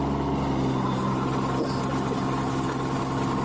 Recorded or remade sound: recorded